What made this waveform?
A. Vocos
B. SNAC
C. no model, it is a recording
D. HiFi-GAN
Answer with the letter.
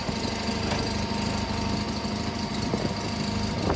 C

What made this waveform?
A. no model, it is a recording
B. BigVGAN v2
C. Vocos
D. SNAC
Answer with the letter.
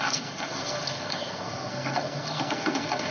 D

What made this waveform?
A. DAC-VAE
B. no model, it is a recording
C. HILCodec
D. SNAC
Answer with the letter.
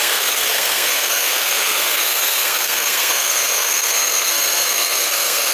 D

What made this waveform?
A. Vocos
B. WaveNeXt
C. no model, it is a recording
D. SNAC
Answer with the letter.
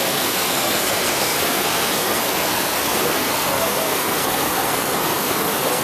D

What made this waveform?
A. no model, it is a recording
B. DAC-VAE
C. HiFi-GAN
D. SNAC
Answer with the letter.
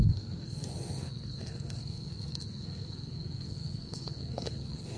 D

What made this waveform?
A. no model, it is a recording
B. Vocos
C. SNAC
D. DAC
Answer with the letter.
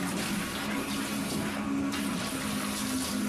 A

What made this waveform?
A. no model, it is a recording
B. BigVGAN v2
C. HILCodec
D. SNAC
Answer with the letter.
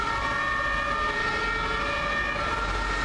A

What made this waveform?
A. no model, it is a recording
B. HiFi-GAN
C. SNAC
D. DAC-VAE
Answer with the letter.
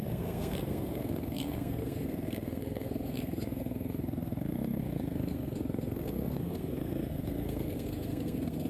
C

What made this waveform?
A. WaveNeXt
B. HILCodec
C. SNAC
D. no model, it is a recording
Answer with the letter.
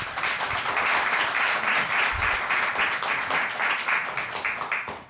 D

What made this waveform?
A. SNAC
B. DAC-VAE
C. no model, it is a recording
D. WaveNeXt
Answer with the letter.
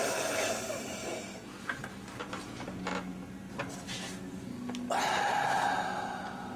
C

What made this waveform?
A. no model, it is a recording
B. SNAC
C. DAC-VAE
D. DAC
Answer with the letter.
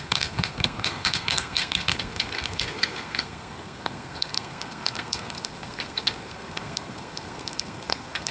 B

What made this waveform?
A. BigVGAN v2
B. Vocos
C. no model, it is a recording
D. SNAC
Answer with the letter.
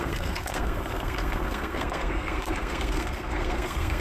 D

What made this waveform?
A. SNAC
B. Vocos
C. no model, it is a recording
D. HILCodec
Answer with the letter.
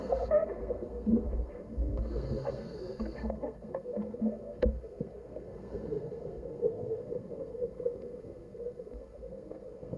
A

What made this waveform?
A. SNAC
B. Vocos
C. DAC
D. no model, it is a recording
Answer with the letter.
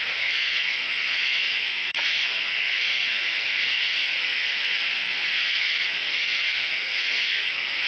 A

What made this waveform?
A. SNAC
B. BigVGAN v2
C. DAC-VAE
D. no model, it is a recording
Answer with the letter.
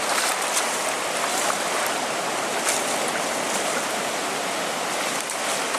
D